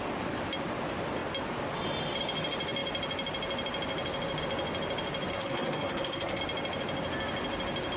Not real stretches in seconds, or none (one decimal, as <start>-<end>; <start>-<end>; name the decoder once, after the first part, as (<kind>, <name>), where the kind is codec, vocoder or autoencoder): 5.3-6.4 (codec, SNAC)